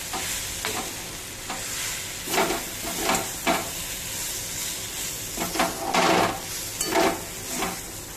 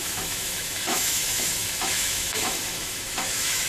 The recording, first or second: first